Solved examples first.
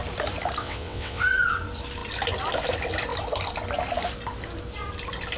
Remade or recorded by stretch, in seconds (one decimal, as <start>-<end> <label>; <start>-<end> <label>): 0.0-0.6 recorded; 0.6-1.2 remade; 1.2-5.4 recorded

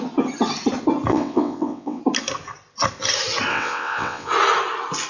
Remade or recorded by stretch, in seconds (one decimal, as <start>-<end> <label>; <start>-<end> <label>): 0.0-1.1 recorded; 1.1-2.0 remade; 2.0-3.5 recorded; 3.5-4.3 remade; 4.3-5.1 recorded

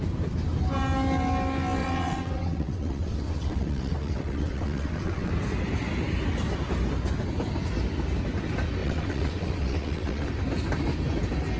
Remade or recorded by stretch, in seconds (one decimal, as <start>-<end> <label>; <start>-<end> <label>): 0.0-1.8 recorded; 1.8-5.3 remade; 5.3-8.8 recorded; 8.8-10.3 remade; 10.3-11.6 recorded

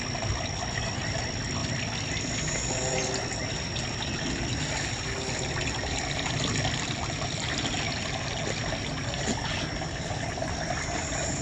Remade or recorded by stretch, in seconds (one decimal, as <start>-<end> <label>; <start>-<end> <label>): 0.0-11.4 recorded

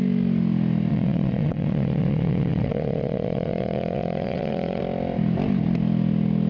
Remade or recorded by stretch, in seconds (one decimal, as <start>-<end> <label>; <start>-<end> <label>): 0.0-0.9 recorded; 0.9-4.8 remade; 4.8-6.5 recorded

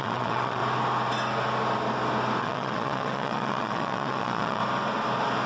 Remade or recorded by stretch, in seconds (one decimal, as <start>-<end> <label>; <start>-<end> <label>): 0.0-0.6 remade; 0.6-2.4 recorded; 2.4-4.6 remade; 4.6-5.5 recorded

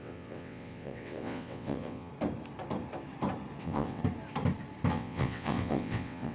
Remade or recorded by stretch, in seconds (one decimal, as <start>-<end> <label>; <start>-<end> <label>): 0.0-2.1 remade; 2.1-3.6 recorded; 3.6-4.0 remade; 4.0-4.9 recorded; 4.9-6.3 remade